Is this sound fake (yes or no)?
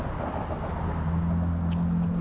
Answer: no